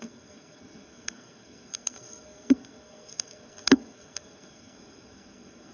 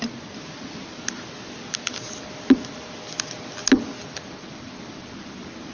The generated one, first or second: first